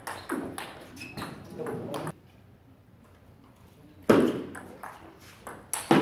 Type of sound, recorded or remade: recorded